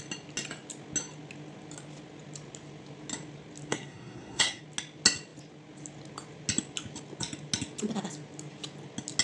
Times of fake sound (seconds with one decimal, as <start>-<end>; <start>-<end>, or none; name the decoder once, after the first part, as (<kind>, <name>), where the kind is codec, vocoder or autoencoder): 3.7-4.6 (codec, SNAC)